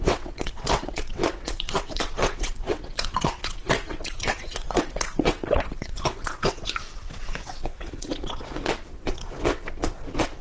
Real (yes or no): no